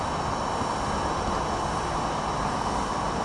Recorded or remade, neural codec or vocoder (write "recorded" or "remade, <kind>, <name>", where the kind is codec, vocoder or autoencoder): recorded